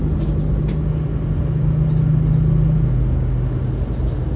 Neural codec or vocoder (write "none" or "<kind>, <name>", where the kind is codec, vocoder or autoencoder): none